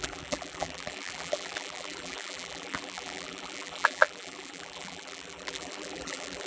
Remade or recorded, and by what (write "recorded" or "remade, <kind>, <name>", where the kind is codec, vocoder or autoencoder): remade, vocoder, BigVGAN v2